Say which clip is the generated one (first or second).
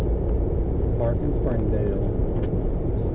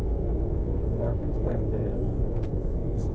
second